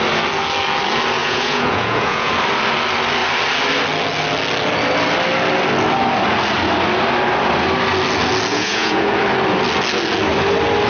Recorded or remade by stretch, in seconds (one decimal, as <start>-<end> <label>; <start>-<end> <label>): 0.0-1.2 recorded; 1.2-2.3 remade; 2.3-8.5 recorded; 8.5-9.2 remade; 9.2-10.9 recorded